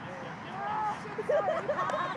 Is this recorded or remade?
recorded